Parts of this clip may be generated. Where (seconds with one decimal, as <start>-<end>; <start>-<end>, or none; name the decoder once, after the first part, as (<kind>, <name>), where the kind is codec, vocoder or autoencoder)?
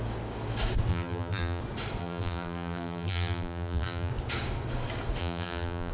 0.9-1.6 (vocoder, BigVGAN v2); 2.0-4.1; 5.2-5.9